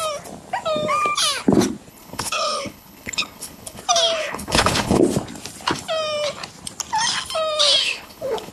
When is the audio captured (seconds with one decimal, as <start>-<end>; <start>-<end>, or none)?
0.0-1.9; 3.8-4.2; 5.0-7.8